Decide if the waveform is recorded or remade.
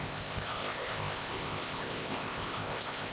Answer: remade